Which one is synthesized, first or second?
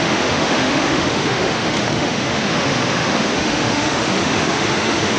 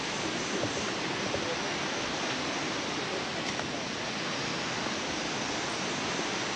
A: first